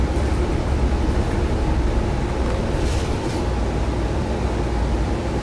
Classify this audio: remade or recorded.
recorded